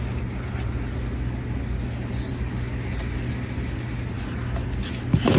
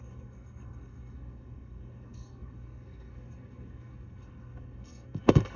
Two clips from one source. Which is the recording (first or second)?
first